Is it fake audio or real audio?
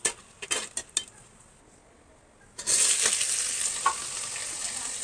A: real